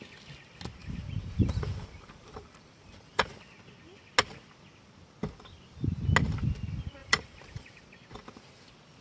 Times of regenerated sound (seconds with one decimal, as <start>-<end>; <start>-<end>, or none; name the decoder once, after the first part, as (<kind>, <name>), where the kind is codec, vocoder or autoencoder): 0.8-3.3 (vocoder, BigVGAN v2); 7.0-7.8